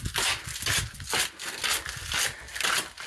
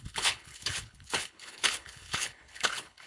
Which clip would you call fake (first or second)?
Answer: second